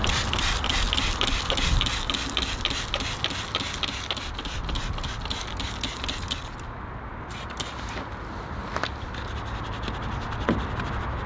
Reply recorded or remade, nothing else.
recorded